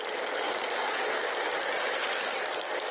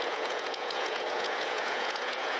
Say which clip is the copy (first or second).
second